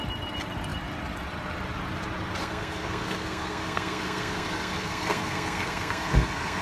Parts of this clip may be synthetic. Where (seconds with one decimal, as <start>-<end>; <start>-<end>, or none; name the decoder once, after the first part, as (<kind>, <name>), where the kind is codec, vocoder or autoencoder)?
2.4-6.6 (codec, SNAC)